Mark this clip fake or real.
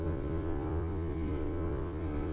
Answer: fake